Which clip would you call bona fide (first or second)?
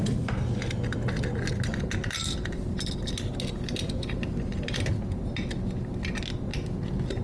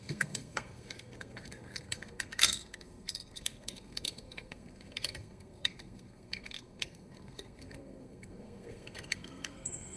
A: first